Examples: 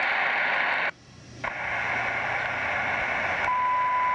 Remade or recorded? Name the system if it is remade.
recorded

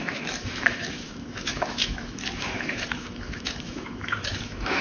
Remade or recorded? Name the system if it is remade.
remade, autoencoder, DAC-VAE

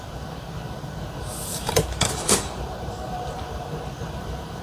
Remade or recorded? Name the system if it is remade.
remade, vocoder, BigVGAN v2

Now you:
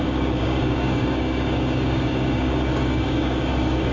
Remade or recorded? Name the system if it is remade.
remade, codec, DAC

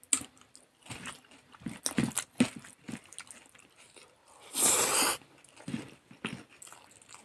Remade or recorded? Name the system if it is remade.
recorded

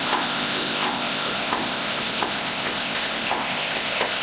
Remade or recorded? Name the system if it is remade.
remade, codec, ZipCodec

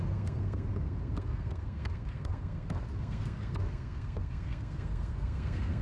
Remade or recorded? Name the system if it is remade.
remade, codec, SNAC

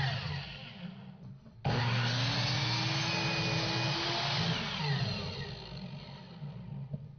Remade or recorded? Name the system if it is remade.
recorded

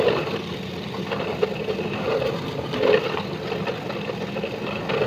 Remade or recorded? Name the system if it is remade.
recorded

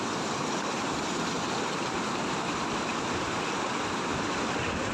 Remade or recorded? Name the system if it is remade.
recorded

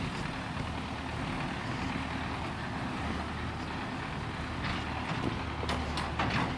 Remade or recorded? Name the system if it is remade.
recorded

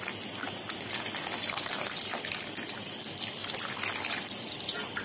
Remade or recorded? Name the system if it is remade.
recorded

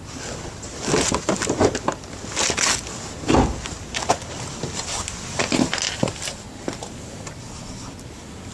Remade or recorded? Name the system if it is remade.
recorded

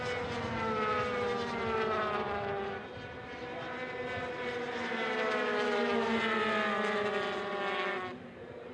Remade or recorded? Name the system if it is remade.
recorded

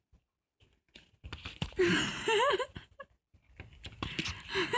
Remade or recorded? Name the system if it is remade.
recorded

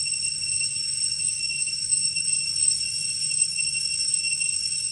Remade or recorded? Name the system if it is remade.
remade, autoencoder, DAC-VAE